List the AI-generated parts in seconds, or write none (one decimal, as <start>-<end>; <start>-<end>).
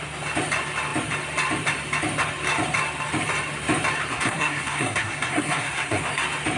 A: 4.1-6.0